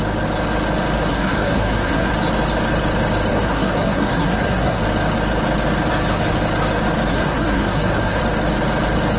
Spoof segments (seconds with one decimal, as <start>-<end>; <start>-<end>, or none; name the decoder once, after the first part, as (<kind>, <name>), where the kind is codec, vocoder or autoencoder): 1.1-2.1 (codec, SNAC); 3.3-4.8; 7.1-8.2